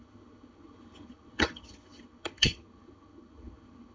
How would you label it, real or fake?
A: fake